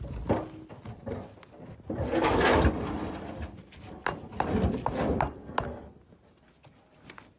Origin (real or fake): real